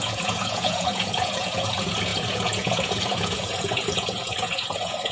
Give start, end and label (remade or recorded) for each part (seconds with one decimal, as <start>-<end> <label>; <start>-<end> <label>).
0.0-5.1 remade